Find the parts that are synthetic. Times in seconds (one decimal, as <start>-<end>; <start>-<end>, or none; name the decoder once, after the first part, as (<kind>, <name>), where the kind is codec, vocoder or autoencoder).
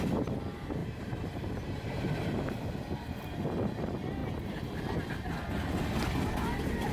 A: 0.8-2.1 (vocoder, BigVGAN v2); 4.2-4.8